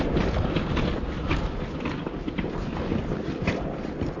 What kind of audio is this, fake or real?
real